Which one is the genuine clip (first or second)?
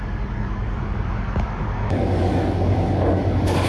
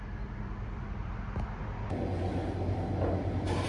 second